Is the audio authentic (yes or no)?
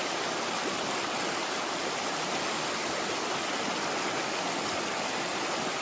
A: yes